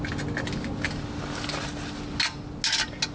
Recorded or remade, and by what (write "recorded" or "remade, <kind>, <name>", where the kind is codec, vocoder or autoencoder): recorded